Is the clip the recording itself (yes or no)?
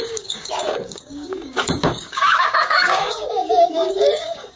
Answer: no